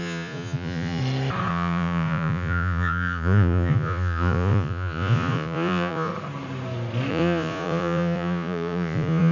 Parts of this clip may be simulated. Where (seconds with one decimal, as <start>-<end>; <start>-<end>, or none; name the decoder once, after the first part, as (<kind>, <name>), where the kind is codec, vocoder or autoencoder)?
0.0-1.0 (vocoder, Vocos); 1.5-6.1; 7.1-9.3